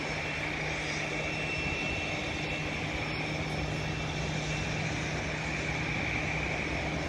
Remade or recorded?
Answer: recorded